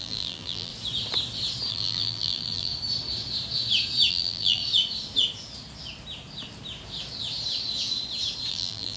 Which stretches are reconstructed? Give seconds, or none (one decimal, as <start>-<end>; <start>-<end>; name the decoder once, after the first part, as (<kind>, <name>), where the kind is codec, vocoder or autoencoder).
0.0-0.7 (vocoder, BigVGAN v2); 1.7-2.7; 4.1-4.6; 8.5-9.0